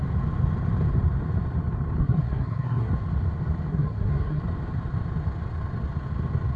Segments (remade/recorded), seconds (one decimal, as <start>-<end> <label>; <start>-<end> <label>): 0.0-2.0 recorded; 2.0-3.0 remade; 3.0-3.7 recorded; 3.7-4.4 remade; 4.4-6.6 recorded